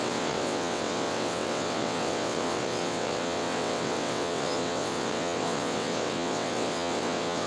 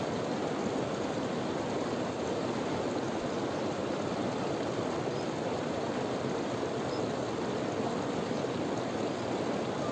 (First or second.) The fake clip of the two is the first